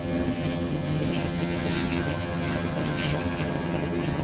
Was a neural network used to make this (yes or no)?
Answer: yes